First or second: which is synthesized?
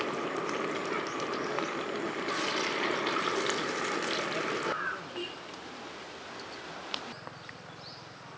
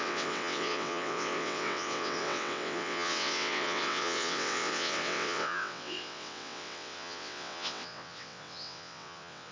second